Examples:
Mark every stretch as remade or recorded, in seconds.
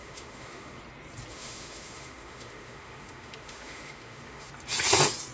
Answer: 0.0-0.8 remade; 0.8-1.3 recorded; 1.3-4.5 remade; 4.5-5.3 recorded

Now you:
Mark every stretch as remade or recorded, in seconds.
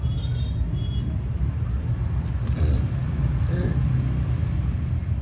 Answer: 0.0-5.2 recorded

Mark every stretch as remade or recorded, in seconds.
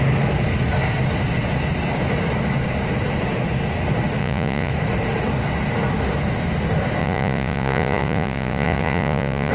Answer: 0.0-4.2 recorded; 4.2-4.7 remade; 4.7-7.0 recorded; 7.0-9.5 remade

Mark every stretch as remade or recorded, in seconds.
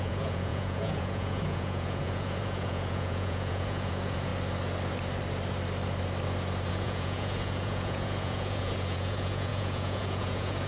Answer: 0.0-4.3 remade; 4.3-6.7 recorded; 6.7-10.7 remade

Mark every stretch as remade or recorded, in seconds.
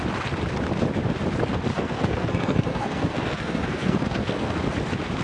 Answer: 0.0-1.7 recorded; 1.7-4.6 remade; 4.6-5.2 recorded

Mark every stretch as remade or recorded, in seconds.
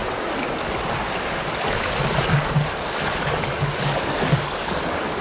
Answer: 0.0-3.1 recorded; 3.1-5.2 remade